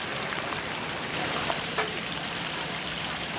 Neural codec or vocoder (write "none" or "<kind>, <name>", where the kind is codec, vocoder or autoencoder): vocoder, BigVGAN v2